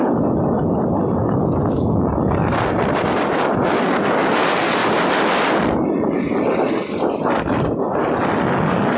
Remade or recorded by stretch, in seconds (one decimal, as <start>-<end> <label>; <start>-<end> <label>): 0.0-1.2 recorded; 1.2-2.0 remade; 2.0-9.0 recorded